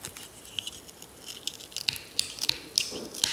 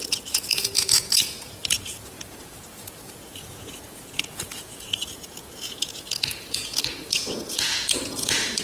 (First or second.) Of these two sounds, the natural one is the first